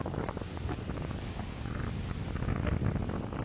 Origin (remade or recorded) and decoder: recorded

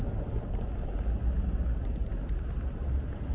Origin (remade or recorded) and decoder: recorded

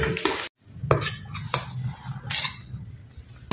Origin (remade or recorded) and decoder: recorded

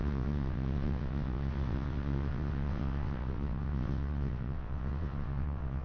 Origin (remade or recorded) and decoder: remade, vocoder, WaveNeXt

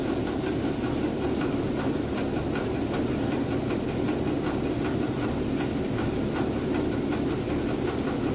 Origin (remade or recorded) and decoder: recorded